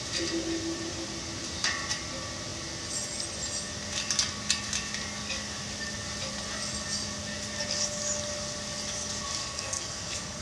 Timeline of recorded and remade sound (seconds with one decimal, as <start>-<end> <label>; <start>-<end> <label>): 0.0-9.4 recorded; 9.4-10.4 remade

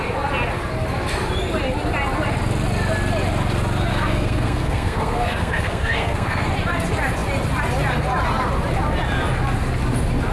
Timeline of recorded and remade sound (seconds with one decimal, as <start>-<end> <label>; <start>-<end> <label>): 0.0-3.9 recorded; 3.9-6.5 remade; 6.5-10.3 recorded

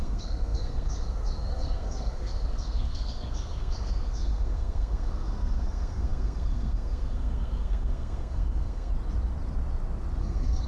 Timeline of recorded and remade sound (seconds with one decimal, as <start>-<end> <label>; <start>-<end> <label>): 0.0-8.9 remade; 8.9-10.2 recorded; 10.2-10.7 remade

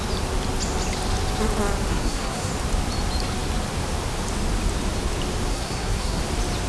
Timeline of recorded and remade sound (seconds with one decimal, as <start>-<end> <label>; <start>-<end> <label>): 0.0-1.9 recorded; 1.9-2.5 remade; 2.5-5.5 recorded; 5.5-6.2 remade; 6.2-6.7 recorded

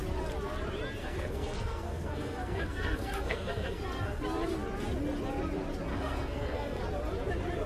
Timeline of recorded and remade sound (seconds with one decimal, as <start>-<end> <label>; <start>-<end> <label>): 0.0-1.0 recorded; 1.0-4.2 remade; 4.2-5.9 recorded; 5.9-6.8 remade; 6.8-7.7 recorded

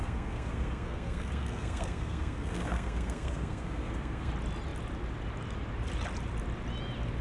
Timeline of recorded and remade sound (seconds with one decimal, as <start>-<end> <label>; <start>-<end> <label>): 0.0-4.3 remade; 4.3-7.2 recorded